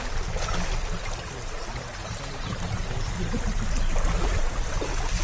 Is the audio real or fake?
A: real